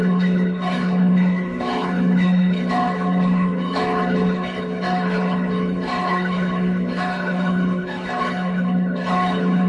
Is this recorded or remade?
remade